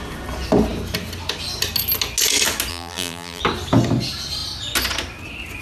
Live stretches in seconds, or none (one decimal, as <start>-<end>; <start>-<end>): 0.0-2.7; 3.4-5.6